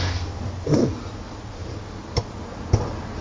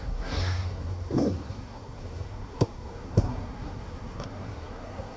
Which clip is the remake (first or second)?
second